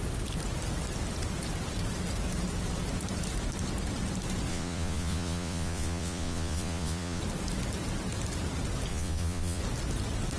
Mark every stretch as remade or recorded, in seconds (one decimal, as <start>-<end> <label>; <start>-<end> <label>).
0.0-4.5 recorded; 4.5-7.2 remade; 7.2-8.9 recorded; 8.9-9.6 remade; 9.6-10.4 recorded